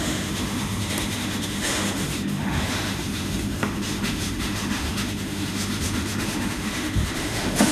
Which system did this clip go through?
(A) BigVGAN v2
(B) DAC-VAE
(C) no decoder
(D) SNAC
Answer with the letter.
B